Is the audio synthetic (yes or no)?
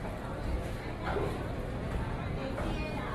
no